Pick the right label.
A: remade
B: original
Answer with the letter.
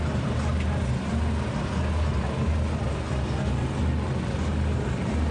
B